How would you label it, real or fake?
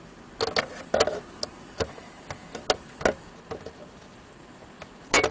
real